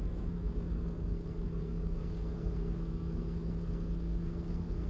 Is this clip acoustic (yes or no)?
no